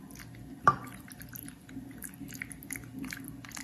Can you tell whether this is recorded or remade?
recorded